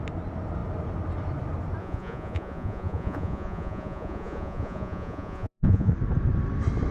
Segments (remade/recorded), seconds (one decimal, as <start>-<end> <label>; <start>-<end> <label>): 0.0-1.8 recorded; 1.8-5.9 remade; 5.9-6.9 recorded